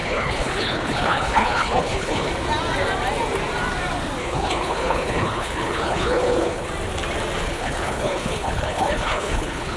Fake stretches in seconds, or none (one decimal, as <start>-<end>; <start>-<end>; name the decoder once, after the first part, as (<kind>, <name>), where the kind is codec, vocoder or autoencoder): 0.0-2.3 (codec, HILCodec); 4.2-6.7; 7.4-9.8